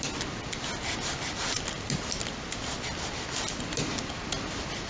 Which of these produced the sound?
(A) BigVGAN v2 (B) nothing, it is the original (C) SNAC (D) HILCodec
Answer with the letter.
B